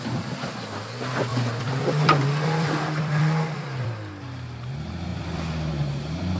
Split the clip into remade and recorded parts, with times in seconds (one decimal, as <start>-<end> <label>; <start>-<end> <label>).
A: 0.0-1.3 recorded; 1.3-4.1 remade; 4.1-5.1 recorded; 5.1-5.7 remade; 5.7-6.4 recorded